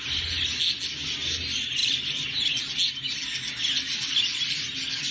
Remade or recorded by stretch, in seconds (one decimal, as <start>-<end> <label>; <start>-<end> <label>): 0.0-5.1 recorded